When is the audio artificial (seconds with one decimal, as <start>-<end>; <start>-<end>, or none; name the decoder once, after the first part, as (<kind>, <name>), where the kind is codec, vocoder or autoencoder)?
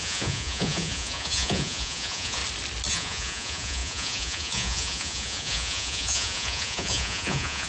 0.0-2.4 (vocoder, Vocos); 2.9-7.7